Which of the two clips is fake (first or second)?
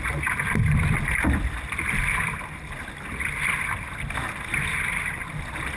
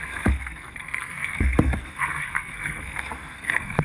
second